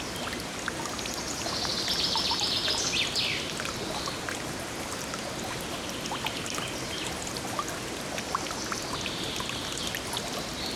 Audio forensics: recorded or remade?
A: recorded